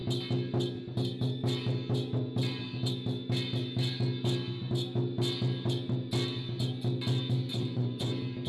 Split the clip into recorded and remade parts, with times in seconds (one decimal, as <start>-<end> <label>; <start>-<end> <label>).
0.0-7.5 recorded; 7.5-8.1 remade; 8.1-8.5 recorded